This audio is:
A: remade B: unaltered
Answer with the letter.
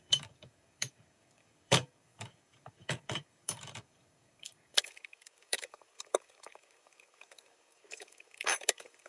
A